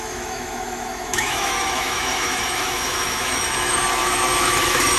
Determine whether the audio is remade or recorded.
remade